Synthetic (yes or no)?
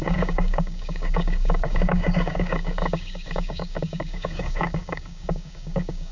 yes